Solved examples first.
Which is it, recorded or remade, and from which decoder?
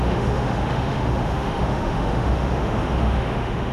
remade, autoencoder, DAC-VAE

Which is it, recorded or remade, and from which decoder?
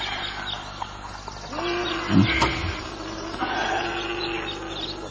recorded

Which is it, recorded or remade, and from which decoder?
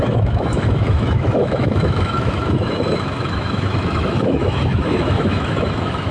remade, autoencoder, DAC-VAE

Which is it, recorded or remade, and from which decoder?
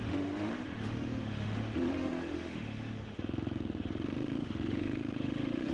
remade, autoencoder, DAC-VAE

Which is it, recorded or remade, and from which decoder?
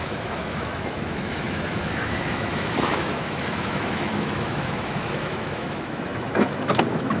remade, autoencoder, DAC-VAE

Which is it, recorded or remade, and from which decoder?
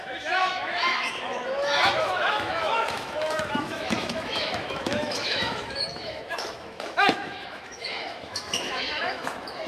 remade, autoencoder, DAC-VAE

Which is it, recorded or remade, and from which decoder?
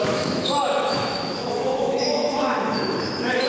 remade, autoencoder, DAC-VAE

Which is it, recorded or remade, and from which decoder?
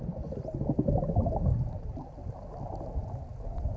recorded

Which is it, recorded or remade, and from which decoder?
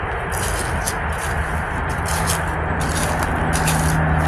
recorded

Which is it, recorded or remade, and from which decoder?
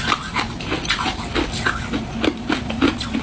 recorded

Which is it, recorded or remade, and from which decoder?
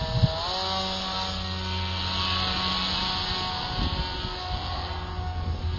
recorded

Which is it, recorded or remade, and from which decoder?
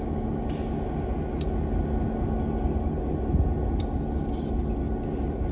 recorded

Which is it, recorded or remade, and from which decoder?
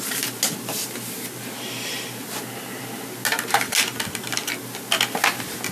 recorded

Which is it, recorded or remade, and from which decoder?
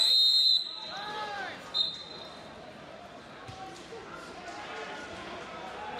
recorded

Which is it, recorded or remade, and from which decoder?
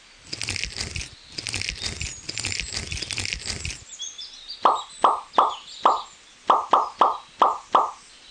recorded